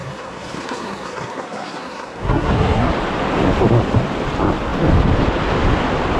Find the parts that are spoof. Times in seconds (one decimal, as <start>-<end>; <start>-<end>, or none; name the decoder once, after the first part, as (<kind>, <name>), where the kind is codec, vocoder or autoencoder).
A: 0.0-2.9 (codec, SNAC)